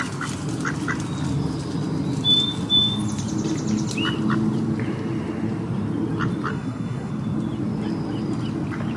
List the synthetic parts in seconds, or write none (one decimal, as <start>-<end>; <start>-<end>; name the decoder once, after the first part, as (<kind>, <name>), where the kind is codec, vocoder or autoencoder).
6.5-7.1 (codec, SNAC)